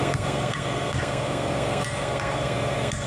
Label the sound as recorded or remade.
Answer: remade